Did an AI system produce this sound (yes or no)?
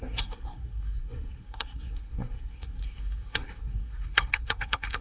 yes